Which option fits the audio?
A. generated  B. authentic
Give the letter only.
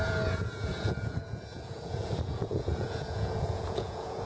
A